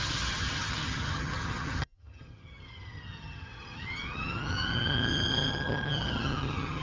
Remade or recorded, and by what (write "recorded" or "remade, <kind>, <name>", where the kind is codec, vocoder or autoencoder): remade, vocoder, HiFi-GAN